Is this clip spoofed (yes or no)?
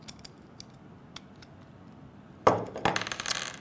no